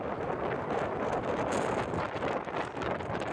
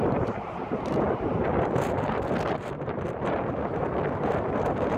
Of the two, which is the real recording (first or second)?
first